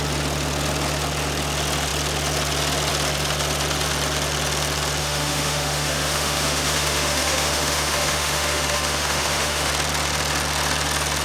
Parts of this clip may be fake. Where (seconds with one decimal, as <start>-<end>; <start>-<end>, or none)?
5.0-9.7